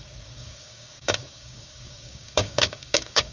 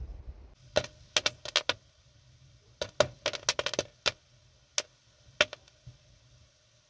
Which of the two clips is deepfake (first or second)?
first